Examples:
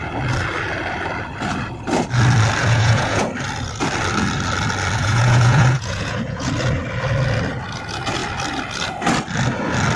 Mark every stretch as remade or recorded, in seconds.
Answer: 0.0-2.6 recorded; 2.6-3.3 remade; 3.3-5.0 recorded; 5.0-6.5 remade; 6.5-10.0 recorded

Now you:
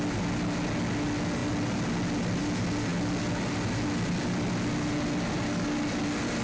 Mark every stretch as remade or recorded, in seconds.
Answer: 0.0-6.4 recorded

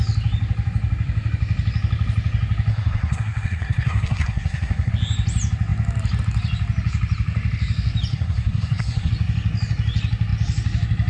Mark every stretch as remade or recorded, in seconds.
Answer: 0.0-2.7 recorded; 2.7-4.9 remade; 4.9-8.1 recorded; 8.1-9.1 remade; 9.1-11.1 recorded

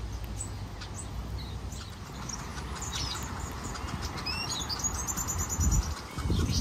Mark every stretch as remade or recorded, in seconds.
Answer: 0.0-6.6 recorded

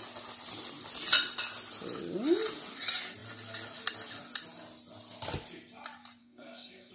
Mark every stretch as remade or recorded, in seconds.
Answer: 0.0-6.2 recorded; 6.2-6.9 remade

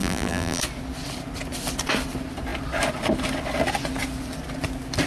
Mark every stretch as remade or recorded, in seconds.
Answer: 0.0-0.6 remade; 0.6-5.1 recorded